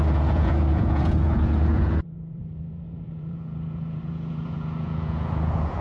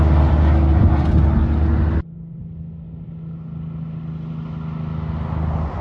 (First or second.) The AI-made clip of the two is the first